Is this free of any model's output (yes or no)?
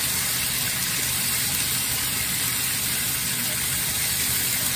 no